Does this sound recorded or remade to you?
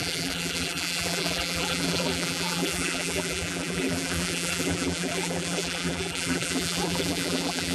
remade